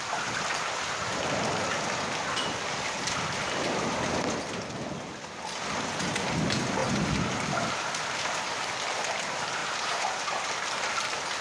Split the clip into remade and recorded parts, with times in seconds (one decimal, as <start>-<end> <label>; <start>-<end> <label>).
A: 0.0-9.6 recorded; 9.6-10.2 remade; 10.2-11.4 recorded